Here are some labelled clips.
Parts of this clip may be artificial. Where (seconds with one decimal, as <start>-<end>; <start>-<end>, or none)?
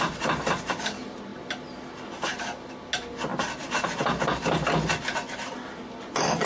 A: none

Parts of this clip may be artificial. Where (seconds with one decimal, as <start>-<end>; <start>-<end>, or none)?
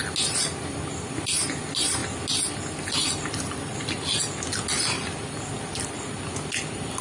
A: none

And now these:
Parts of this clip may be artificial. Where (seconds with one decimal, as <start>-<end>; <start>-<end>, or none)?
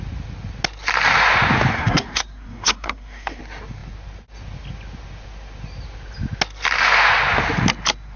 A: 1.7-3.4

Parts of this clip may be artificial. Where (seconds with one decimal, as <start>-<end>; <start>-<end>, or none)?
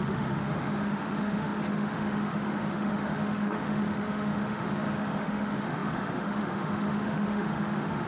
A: 0.0-8.1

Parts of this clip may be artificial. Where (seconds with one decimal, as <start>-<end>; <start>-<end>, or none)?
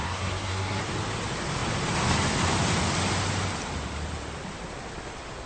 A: 0.0-0.8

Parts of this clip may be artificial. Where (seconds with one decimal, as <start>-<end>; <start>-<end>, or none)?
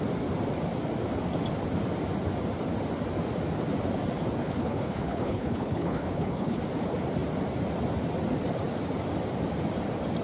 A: 4.4-6.6